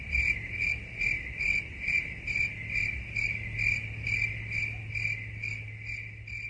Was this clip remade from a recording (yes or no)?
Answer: no